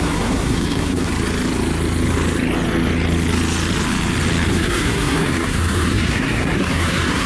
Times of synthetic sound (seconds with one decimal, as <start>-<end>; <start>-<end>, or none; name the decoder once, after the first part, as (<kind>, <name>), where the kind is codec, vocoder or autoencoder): 0.0-1.1 (codec, SNAC); 4.5-7.3